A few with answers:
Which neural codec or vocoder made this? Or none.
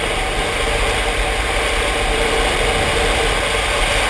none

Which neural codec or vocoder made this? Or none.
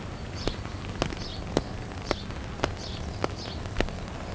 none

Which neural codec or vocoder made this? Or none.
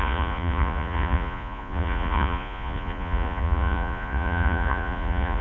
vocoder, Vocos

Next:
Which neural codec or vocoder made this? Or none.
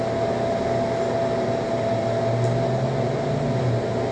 none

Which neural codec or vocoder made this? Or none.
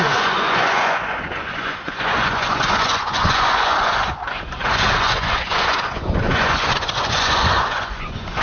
vocoder, Vocos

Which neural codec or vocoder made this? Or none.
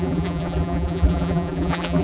vocoder, BigVGAN v2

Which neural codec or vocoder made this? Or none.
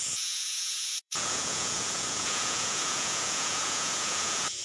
vocoder, Vocos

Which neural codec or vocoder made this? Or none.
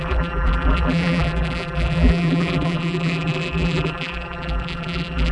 vocoder, BigVGAN v2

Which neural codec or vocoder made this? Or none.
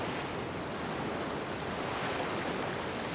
none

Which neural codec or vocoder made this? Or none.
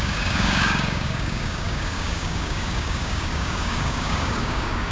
codec, DAC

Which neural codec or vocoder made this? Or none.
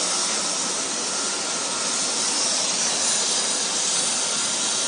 none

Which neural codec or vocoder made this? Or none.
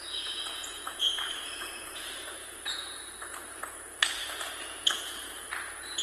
vocoder, Vocos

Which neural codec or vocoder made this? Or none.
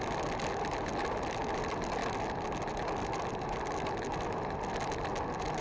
none